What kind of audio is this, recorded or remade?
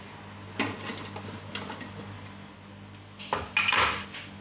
recorded